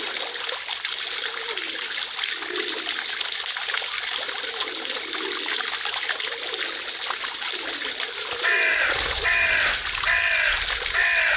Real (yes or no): yes